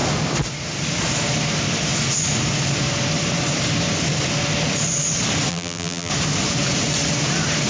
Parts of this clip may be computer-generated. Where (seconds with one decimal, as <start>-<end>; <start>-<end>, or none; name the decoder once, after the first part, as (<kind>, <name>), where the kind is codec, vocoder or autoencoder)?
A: 5.5-6.1 (vocoder, BigVGAN v2)